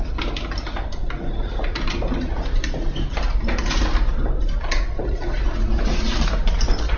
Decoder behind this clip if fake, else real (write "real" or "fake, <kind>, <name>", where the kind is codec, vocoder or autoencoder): real